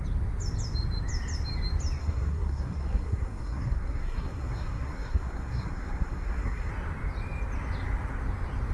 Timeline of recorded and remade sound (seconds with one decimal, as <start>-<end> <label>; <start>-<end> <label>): 0.0-2.0 recorded; 2.0-6.7 remade; 6.7-8.7 recorded